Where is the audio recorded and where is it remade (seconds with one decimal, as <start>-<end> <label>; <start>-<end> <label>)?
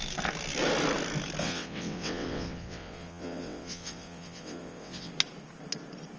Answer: 0.0-1.4 recorded; 1.4-5.1 remade; 5.1-6.2 recorded